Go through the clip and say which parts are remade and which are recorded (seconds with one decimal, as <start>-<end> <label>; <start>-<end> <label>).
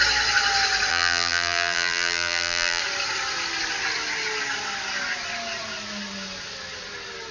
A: 0.0-0.9 recorded; 0.9-2.8 remade; 2.8-7.3 recorded